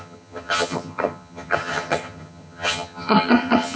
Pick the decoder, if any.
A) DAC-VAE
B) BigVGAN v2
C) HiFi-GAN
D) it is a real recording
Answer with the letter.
C